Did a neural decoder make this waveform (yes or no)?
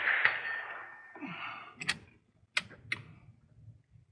no